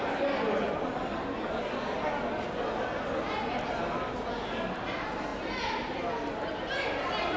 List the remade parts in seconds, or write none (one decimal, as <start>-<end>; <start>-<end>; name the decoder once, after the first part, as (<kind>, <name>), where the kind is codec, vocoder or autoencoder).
5.3-6.1 (vocoder, BigVGAN v2)